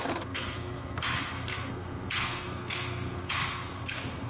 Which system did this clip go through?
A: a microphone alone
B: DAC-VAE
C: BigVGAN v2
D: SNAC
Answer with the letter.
D